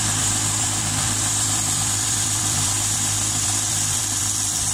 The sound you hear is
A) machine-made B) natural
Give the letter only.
A